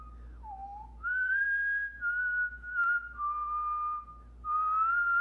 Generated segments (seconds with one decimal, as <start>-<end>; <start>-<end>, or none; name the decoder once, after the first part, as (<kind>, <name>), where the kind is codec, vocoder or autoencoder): 0.6-1.4 (vocoder, BigVGAN v2)